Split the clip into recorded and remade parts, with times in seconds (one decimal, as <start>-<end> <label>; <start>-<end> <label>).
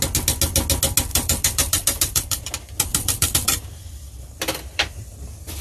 0.0-1.1 recorded; 1.1-2.5 remade; 2.5-2.9 recorded; 2.9-5.1 remade; 5.1-5.6 recorded